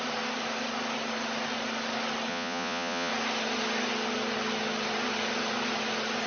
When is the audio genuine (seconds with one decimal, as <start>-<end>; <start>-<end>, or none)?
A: 0.0-2.3; 3.1-6.3